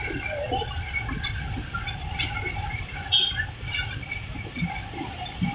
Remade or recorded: recorded